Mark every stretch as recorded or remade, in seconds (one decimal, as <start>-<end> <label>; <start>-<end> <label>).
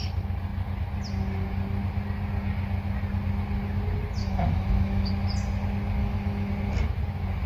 0.0-4.2 recorded; 4.2-5.1 remade; 5.1-6.0 recorded; 6.0-6.5 remade; 6.5-7.5 recorded